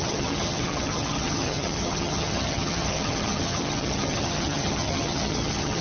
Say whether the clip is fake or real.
fake